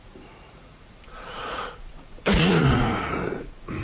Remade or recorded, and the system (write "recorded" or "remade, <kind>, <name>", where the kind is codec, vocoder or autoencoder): remade, vocoder, Vocos